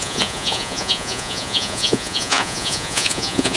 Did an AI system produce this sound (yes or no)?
yes